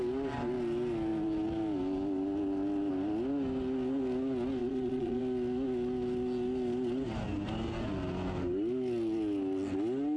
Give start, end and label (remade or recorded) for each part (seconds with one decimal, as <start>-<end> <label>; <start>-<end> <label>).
0.0-4.6 recorded; 4.6-5.2 remade; 5.2-10.2 recorded